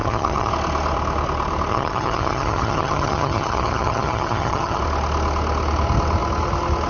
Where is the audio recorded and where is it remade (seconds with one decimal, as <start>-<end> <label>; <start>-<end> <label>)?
0.0-0.5 remade; 0.5-1.7 recorded; 1.7-4.8 remade; 4.8-6.9 recorded